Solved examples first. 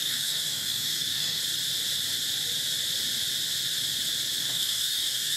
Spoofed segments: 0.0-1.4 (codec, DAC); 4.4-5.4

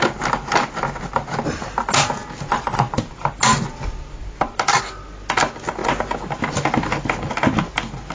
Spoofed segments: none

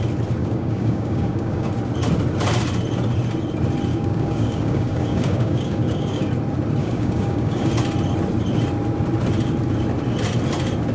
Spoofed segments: 0.4-1.7 (codec, DAC); 3.9-6.3; 6.8-7.7

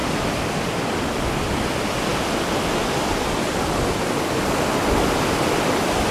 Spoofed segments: none